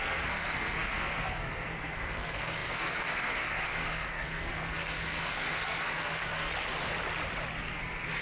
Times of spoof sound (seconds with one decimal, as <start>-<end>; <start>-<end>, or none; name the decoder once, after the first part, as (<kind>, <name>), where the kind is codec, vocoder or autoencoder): 0.0-6.5 (codec, SNAC); 7.6-8.2